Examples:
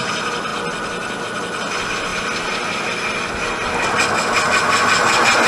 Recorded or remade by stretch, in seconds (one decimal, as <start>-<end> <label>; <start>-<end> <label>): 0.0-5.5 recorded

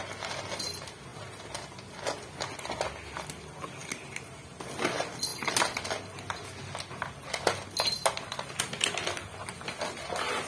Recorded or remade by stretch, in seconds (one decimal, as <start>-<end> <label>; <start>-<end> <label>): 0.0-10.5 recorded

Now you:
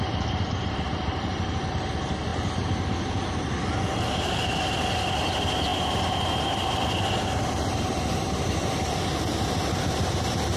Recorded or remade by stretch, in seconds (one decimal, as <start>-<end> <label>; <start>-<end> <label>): 0.0-5.7 recorded; 5.7-7.1 remade; 7.1-10.6 recorded

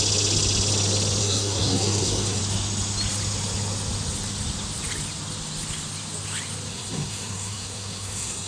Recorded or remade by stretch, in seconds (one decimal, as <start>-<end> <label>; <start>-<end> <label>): 0.0-1.2 recorded; 1.2-2.4 remade; 2.4-6.7 recorded; 6.7-8.5 remade

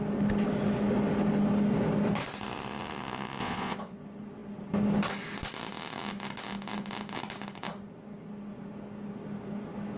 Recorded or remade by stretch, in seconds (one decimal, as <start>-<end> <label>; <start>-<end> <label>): 0.0-3.4 recorded; 3.4-4.0 remade; 4.0-10.0 recorded

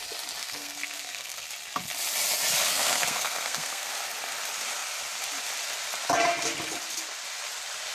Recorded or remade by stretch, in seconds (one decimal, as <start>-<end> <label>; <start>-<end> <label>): 0.0-0.4 recorded; 0.4-1.5 remade; 1.5-2.7 recorded; 2.7-3.9 remade; 3.9-7.9 recorded